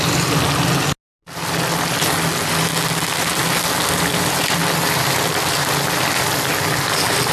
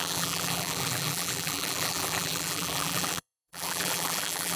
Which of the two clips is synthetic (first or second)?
second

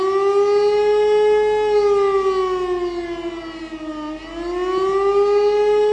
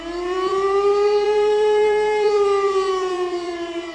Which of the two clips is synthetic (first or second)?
second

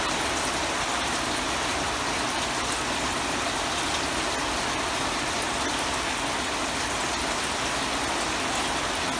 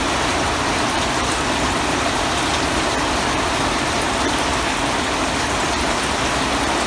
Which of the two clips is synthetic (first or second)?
second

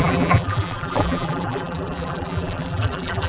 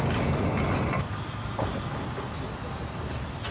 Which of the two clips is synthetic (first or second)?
first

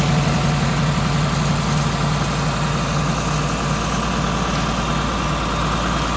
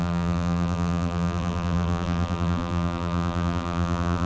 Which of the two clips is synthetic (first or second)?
second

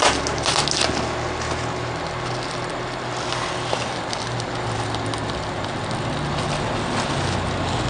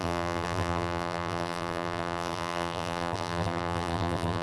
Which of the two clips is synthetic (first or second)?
second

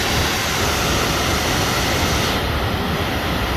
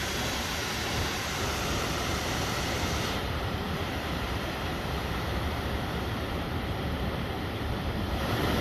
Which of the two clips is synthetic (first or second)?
second